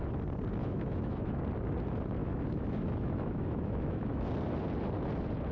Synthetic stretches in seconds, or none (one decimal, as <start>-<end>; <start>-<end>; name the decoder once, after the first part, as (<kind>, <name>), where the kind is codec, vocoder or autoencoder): 0.6-1.4 (autoencoder, DAC-VAE); 2.2-4.2